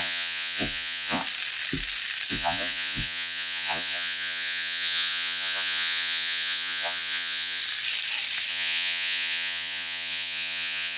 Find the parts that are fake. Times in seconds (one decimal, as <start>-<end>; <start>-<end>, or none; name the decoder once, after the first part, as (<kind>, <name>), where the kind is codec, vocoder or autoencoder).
0.0-1.2 (vocoder, Vocos); 2.3-7.6; 8.5-11.0